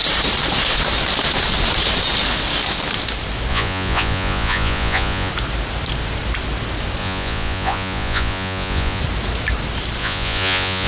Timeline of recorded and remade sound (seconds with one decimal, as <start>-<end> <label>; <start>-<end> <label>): 0.0-3.5 recorded; 3.5-5.3 remade; 5.3-7.0 recorded; 7.0-9.0 remade; 9.0-10.0 recorded; 10.0-10.9 remade